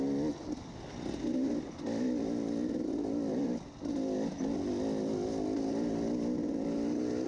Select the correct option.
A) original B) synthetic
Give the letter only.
A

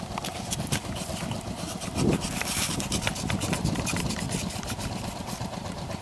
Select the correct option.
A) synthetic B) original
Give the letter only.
A